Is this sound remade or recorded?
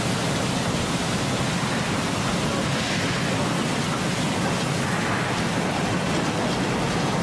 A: recorded